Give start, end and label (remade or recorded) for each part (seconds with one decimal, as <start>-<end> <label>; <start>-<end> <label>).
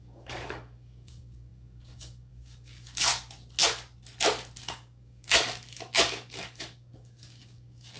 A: 0.0-3.1 remade; 3.1-4.6 recorded; 4.6-8.0 remade